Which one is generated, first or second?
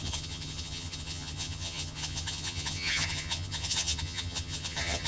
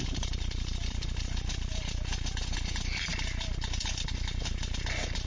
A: first